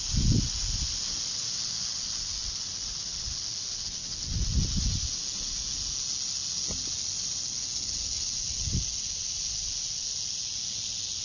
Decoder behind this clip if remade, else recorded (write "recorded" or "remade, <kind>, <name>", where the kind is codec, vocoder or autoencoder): recorded